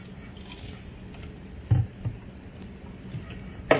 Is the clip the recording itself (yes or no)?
yes